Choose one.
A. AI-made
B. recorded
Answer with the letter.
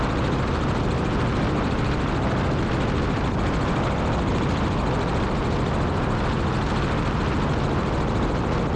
B